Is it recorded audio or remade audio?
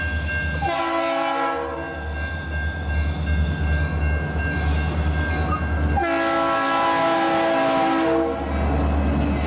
recorded